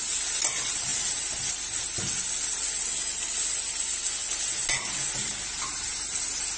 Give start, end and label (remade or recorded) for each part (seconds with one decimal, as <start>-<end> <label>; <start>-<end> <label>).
0.0-6.6 recorded